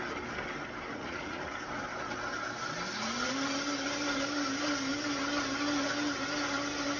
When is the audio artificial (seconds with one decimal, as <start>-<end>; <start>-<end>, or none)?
1.0-1.5

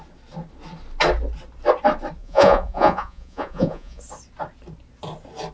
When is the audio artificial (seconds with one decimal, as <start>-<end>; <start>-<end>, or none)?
2.2-4.0

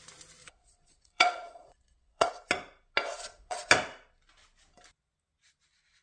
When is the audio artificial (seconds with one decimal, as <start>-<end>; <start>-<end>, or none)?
0.4-2.3; 3.2-3.7

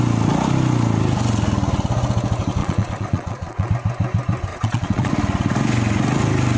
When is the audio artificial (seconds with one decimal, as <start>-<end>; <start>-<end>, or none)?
2.6-3.7; 4.5-5.1

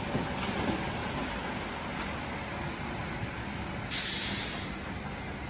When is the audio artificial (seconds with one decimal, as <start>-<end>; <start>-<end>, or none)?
none

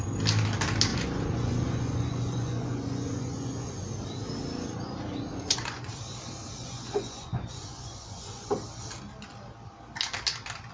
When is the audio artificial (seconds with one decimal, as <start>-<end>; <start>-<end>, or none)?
0.9-3.7; 5.3-5.8; 6.6-8.5

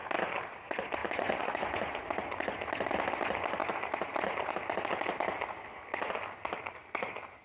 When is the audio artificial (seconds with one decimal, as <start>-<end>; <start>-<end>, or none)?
1.0-2.0

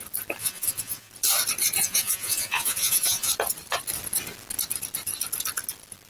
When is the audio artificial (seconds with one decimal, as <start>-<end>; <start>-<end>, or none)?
0.4-1.1; 1.8-3.3